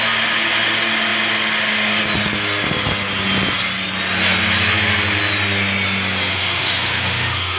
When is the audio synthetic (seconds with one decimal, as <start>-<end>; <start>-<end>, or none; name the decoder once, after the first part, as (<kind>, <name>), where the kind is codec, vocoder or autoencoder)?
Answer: 6.3-7.6 (autoencoder, DAC-VAE)